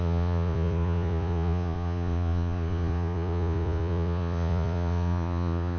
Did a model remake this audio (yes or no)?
yes